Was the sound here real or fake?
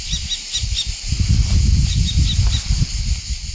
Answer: real